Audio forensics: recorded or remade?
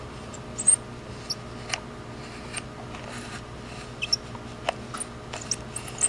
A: recorded